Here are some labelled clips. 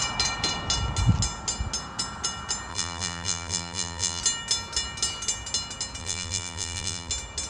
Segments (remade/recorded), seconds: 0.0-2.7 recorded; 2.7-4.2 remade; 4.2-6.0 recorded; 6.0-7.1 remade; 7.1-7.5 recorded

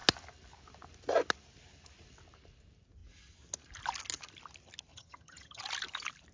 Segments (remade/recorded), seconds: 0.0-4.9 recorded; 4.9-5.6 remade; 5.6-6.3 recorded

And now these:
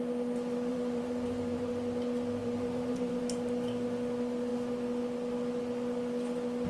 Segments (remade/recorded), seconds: 0.0-0.7 recorded; 0.7-1.7 remade; 1.7-2.4 recorded; 2.4-3.2 remade; 3.2-6.7 recorded

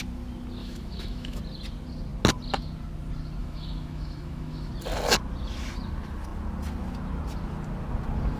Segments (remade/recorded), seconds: 0.0-0.6 recorded; 0.6-1.4 remade; 1.4-3.4 recorded; 3.4-4.7 remade; 4.7-8.4 recorded

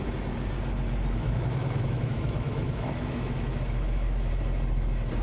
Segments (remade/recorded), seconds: 0.0-1.2 recorded; 1.2-4.3 remade; 4.3-5.2 recorded

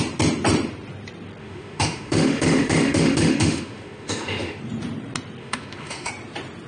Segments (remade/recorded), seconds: 0.0-1.4 recorded; 1.4-4.6 remade; 4.6-5.4 recorded; 5.4-6.1 remade; 6.1-6.7 recorded

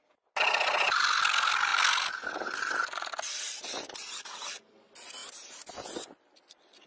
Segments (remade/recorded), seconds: 0.0-6.9 recorded